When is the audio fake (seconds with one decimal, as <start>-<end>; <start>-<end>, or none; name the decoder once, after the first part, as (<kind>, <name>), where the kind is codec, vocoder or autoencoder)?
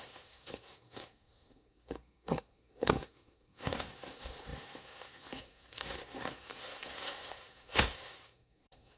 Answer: 0.0-9.0 (codec, SNAC)